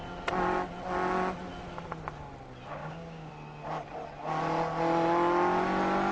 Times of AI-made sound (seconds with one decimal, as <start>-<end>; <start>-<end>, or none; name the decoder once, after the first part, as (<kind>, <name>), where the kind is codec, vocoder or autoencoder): 2.8-3.3 (codec, DAC)